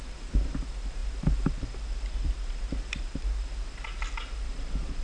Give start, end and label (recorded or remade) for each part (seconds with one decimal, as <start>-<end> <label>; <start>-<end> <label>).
0.0-5.0 recorded